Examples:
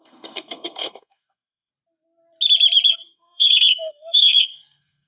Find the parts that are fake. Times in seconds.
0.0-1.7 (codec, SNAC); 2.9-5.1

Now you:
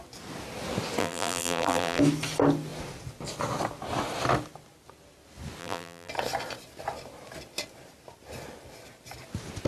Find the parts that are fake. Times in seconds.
1.0-2.0 (vocoder, BigVGAN v2); 5.6-6.1

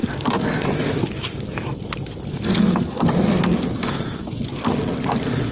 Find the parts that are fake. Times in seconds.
none

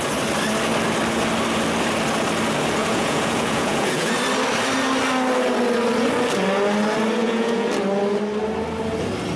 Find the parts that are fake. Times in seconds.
2.8-4.1 (vocoder, Vocos); 7.2-7.7

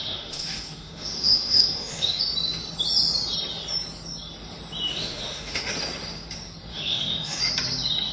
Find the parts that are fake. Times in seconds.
0.0-2.2 (autoencoder, DAC-VAE); 4.9-5.7; 6.7-7.4

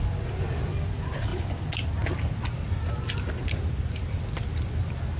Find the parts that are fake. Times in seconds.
none